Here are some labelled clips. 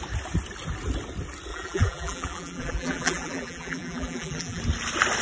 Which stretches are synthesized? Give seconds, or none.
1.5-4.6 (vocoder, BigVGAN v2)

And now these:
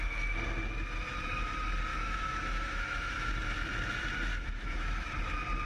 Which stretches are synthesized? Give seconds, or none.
1.9-3.3 (autoencoder, DAC-VAE); 4.3-5.1

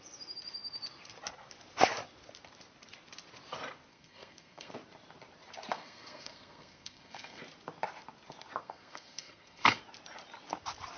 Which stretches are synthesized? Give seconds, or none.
3.9-4.7 (codec, SNAC); 5.7-7.4; 8.6-9.8

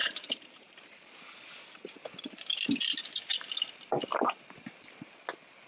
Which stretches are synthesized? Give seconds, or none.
0.0-0.8 (vocoder, BigVGAN v2)

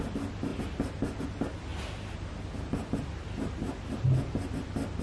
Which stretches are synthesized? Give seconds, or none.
none

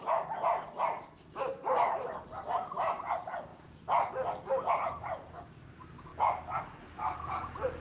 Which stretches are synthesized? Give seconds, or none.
none